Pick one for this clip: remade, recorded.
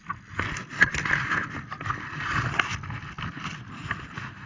recorded